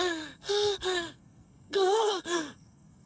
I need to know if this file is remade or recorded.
remade